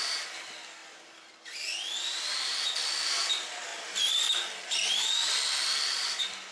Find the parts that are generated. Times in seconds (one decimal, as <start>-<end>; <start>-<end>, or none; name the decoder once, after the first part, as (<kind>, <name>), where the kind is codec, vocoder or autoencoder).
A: none